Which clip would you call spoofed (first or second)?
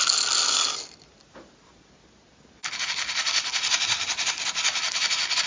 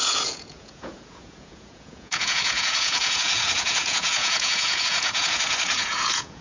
second